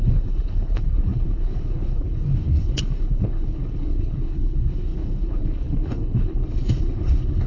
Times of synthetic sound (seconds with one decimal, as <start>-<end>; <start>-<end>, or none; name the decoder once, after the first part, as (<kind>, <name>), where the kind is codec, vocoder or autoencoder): 0.0-7.5 (codec, HILCodec)